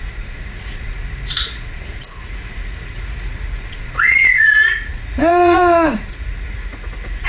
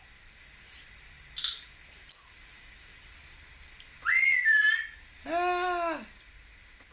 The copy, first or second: first